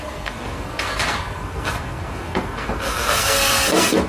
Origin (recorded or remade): remade